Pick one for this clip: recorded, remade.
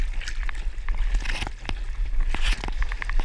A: recorded